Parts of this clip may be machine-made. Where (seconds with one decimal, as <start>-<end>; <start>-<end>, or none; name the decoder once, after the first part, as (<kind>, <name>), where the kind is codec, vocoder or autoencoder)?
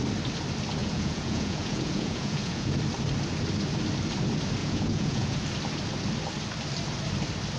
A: 0.8-2.8 (vocoder, Vocos); 4.6-5.4